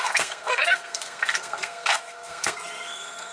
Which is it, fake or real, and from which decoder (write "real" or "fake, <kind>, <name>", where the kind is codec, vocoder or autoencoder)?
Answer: fake, codec, SNAC